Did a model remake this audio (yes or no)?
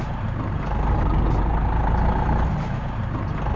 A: yes